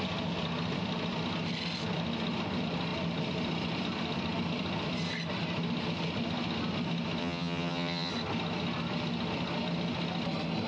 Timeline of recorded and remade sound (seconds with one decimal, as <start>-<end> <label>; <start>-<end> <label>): 0.0-7.2 recorded; 7.2-8.1 remade; 8.1-10.7 recorded